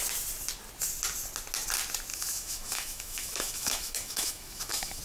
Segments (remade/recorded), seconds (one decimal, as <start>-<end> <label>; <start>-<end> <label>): 0.0-2.1 recorded; 2.1-5.0 remade